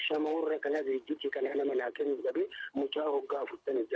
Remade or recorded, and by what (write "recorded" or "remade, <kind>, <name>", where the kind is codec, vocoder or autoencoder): remade, codec, HILCodec